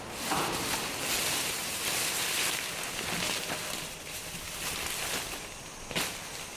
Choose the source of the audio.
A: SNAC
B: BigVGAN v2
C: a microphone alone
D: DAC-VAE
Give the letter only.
C